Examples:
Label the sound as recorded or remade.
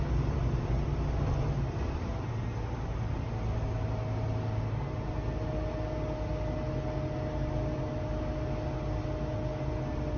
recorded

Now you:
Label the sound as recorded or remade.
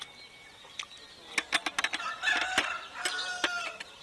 recorded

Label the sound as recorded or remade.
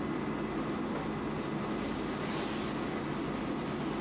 recorded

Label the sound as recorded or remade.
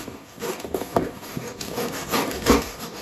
remade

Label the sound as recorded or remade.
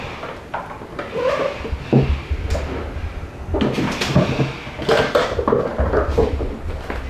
recorded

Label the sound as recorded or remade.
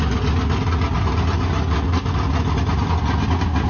recorded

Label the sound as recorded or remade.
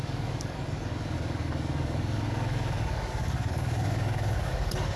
remade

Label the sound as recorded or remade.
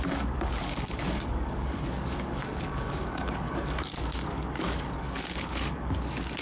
remade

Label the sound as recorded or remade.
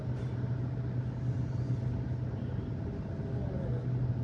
recorded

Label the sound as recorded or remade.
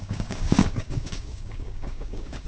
remade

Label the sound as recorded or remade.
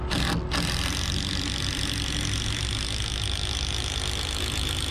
recorded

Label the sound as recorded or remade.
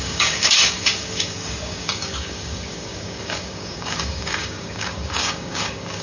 remade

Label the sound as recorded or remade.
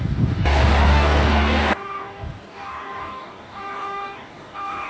remade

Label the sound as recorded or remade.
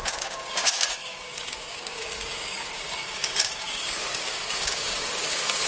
remade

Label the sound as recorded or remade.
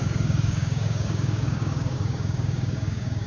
remade